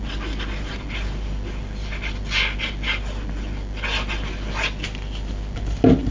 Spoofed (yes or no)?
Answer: no